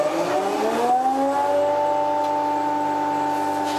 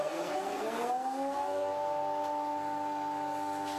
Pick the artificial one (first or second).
second